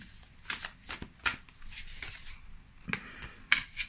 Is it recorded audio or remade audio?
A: recorded